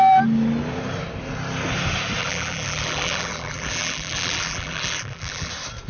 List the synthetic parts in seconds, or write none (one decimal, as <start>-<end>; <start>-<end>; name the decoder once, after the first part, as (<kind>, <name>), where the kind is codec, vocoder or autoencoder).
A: 2.2-5.5 (vocoder, BigVGAN v2)